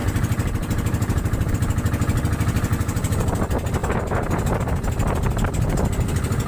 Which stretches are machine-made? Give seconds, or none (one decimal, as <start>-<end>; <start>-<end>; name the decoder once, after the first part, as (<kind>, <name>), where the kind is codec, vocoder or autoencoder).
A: 0.0-1.5 (vocoder, BigVGAN v2); 2.7-3.3